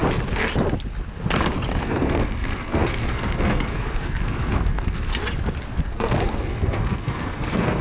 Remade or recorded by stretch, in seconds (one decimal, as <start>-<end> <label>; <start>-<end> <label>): 0.0-1.8 recorded; 1.8-5.1 remade; 5.1-5.8 recorded; 5.8-7.8 remade